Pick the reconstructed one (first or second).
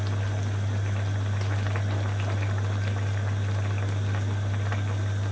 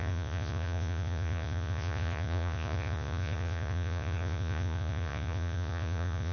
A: second